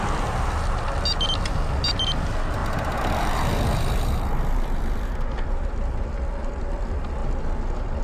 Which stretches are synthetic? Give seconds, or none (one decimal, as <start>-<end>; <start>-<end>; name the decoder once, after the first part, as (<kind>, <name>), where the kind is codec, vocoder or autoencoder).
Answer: 2.6-5.1 (vocoder, BigVGAN v2)

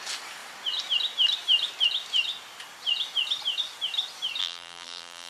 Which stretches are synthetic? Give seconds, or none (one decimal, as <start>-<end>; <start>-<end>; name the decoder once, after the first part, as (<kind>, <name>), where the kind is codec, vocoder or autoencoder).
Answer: 4.4-5.3 (vocoder, BigVGAN v2)

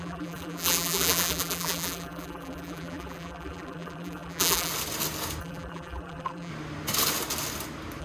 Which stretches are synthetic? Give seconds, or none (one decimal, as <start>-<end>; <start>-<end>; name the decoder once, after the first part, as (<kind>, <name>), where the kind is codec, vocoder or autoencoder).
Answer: 0.0-4.7 (vocoder, BigVGAN v2); 5.4-6.5

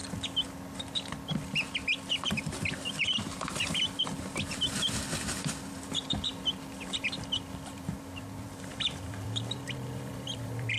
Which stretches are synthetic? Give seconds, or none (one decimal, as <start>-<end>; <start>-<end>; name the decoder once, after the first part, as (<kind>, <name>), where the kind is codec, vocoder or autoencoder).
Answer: 2.3-6.3 (vocoder, BigVGAN v2); 7.4-10.8